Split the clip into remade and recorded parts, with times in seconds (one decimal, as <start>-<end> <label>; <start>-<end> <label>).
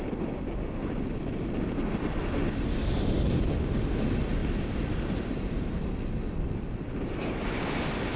0.0-8.2 recorded